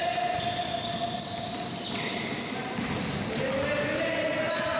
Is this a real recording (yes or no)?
yes